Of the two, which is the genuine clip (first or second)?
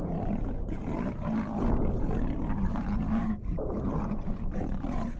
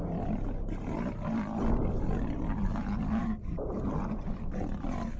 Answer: second